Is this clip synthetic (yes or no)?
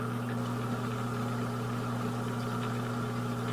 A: no